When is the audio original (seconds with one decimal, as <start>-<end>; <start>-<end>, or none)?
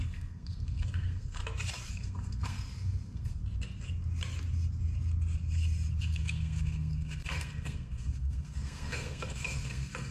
1.4-1.9; 3.4-6.0